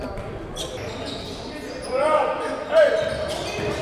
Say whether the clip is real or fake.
real